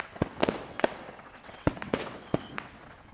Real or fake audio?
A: fake